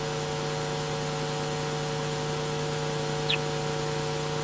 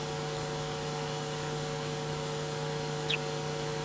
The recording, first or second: first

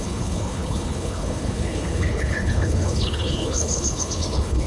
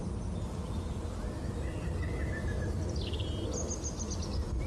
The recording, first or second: second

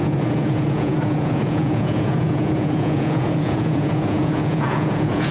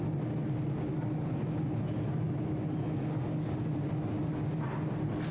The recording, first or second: second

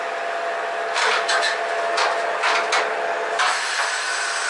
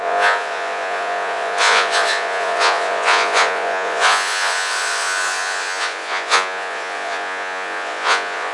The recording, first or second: first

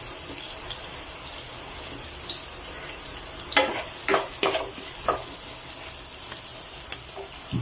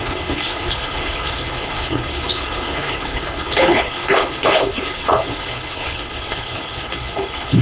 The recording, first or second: first